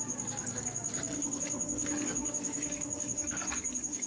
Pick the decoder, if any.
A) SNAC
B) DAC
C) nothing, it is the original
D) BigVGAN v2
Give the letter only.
B